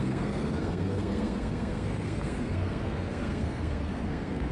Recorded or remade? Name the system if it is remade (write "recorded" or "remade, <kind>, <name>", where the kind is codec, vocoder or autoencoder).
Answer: remade, codec, SNAC